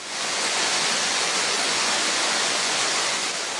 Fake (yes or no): yes